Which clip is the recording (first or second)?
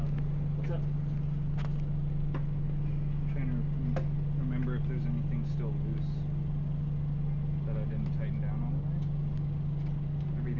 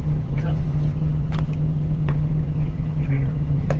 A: first